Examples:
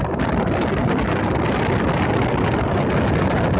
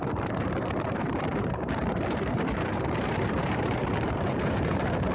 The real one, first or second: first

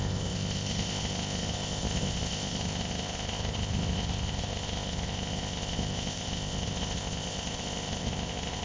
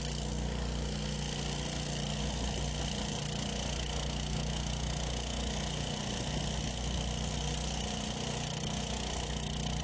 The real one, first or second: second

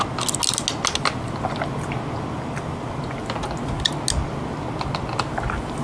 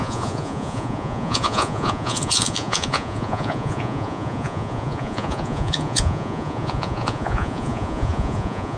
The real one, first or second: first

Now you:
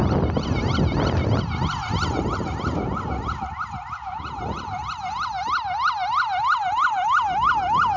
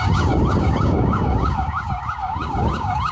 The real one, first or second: first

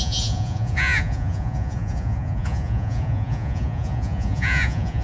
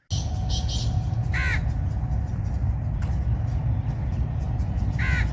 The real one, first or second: second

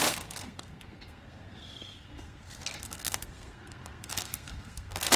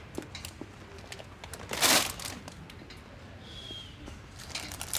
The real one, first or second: second